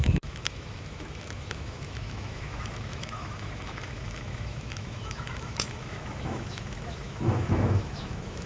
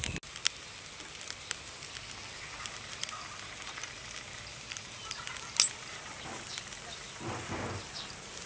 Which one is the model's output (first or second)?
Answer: first